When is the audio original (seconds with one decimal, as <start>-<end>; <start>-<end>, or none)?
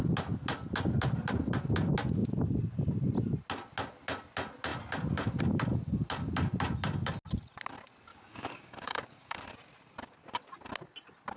0.0-8.1; 9.4-11.4